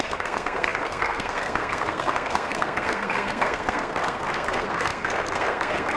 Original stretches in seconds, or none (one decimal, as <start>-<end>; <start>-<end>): none